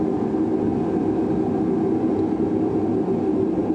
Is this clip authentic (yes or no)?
yes